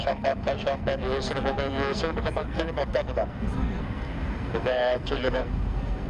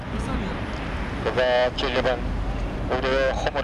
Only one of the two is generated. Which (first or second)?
first